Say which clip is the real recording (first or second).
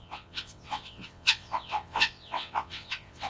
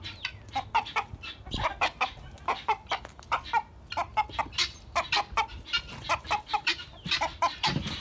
second